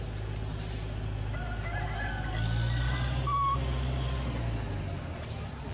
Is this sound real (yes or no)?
yes